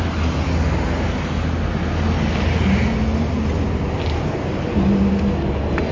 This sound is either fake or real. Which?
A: real